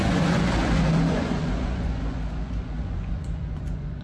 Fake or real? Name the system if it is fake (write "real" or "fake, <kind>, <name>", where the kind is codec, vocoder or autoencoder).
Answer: fake, vocoder, Vocos